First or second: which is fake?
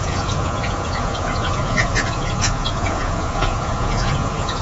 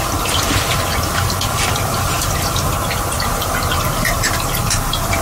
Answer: first